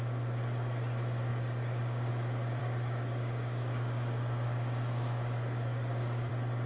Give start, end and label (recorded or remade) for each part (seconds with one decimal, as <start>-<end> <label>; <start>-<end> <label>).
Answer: 0.0-1.3 recorded; 1.3-2.1 remade; 2.1-2.6 recorded; 2.6-6.3 remade; 6.3-6.7 recorded